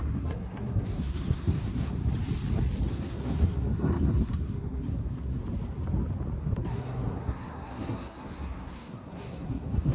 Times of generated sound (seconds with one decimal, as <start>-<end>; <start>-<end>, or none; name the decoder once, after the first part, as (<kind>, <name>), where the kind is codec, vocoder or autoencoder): 0.0-2.0 (codec, SNAC); 2.9-5.4; 6.4-9.9